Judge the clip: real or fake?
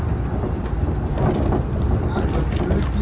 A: real